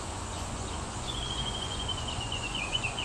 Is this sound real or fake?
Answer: fake